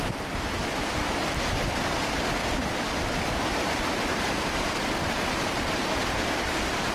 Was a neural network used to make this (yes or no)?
yes